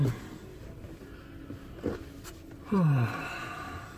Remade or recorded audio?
recorded